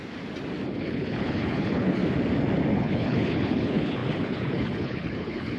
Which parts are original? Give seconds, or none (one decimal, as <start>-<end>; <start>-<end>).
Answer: 0.0-0.8; 2.0-2.7